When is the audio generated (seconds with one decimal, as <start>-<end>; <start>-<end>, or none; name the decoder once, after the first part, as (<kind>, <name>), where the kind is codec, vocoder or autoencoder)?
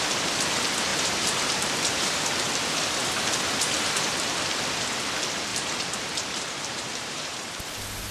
0.9-2.2 (vocoder, BigVGAN v2); 5.5-7.5